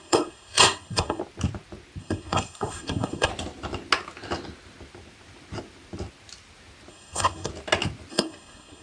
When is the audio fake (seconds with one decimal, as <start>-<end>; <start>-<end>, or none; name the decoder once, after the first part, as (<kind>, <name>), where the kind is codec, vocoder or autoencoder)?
0.0-1.2 (codec, SNAC); 2.0-3.3; 6.9-7.5; 8.1-8.8

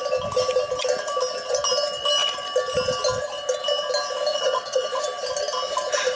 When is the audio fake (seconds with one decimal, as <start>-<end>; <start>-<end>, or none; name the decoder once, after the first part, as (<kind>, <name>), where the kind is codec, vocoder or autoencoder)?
4.3-5.0 (vocoder, WaveNeXt)

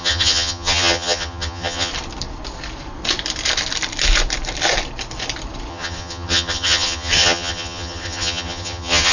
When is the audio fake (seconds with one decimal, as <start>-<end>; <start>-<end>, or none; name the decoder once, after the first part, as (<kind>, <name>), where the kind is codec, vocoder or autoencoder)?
0.0-1.9 (vocoder, HiFi-GAN); 5.7-9.1

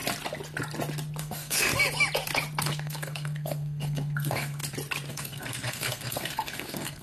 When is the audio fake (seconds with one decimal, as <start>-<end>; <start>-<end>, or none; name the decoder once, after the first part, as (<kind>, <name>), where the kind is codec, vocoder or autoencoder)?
1.2-1.7 (codec, SNAC); 2.7-4.6; 5.1-7.0